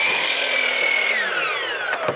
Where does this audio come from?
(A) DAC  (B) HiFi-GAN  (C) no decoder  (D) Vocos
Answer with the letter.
C